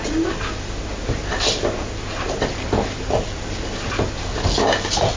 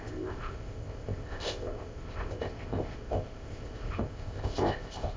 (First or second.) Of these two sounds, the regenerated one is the second